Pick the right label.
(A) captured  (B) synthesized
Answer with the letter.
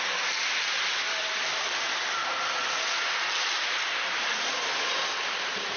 A